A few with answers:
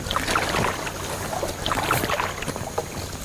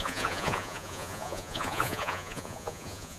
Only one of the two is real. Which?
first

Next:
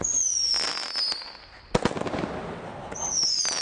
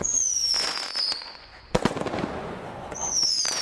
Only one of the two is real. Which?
first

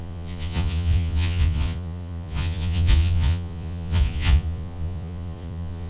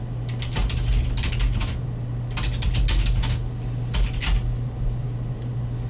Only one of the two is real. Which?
second